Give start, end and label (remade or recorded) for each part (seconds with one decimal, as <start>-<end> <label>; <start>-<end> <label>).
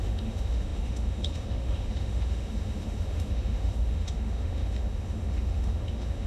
0.0-6.3 remade